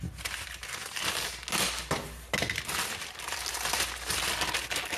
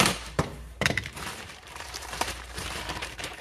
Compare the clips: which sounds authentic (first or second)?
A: first